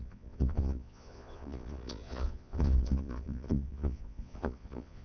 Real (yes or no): no